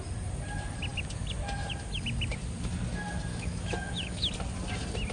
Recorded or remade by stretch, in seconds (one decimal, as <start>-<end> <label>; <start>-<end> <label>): 0.0-3.3 recorded; 3.3-4.3 remade; 4.3-5.1 recorded